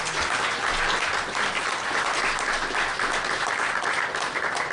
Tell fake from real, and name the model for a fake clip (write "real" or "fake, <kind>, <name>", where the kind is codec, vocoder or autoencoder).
real